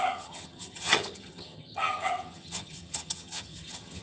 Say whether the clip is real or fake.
fake